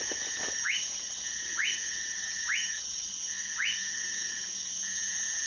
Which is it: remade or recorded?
remade